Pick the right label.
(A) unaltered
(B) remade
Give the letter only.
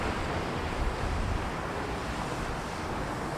B